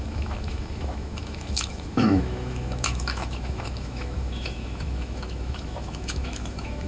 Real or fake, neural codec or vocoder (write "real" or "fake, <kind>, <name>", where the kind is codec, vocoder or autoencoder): fake, autoencoder, DAC-VAE